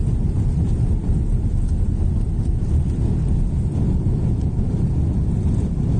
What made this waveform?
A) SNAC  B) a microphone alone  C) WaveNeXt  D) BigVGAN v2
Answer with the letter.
D